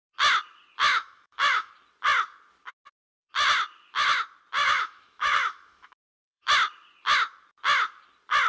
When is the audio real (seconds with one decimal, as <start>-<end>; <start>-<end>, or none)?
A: 0.0-0.9; 1.7-4.6; 6.5-8.5